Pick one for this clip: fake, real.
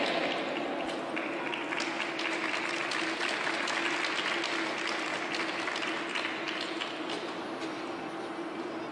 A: real